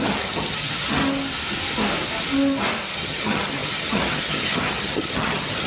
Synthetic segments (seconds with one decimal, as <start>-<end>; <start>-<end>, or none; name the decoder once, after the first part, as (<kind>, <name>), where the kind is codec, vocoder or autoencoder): 0.0-1.0 (vocoder, HiFi-GAN); 2.9-5.7

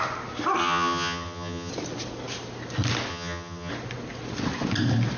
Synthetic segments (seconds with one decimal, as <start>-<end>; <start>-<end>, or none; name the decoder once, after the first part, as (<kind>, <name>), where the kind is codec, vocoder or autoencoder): 0.6-1.7 (vocoder, HiFi-GAN); 3.1-3.7

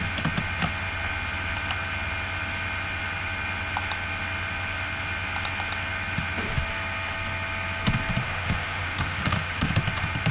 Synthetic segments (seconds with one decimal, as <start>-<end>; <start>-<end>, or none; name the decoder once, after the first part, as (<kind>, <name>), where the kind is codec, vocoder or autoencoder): 8.2-9.7 (autoencoder, DAC-VAE)

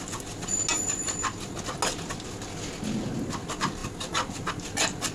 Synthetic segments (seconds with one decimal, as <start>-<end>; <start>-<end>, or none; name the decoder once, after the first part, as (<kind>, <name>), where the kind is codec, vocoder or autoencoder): none